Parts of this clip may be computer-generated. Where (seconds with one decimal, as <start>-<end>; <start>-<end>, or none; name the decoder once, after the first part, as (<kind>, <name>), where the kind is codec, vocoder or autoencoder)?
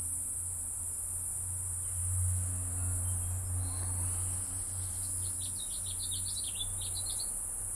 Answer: none